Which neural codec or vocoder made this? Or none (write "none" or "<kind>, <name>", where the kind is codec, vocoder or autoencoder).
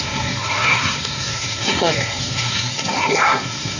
codec, SNAC